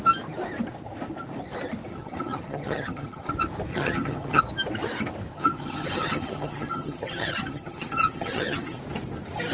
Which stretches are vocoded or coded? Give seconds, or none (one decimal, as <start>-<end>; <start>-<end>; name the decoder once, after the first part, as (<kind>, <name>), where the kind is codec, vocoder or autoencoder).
1.9-3.3 (vocoder, HiFi-GAN); 3.7-4.4; 5.3-8.8